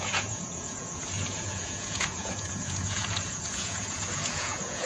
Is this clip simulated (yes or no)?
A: yes